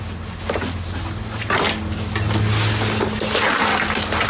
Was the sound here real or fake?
real